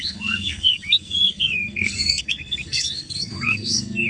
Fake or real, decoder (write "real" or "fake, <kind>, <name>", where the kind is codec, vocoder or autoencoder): fake, codec, SNAC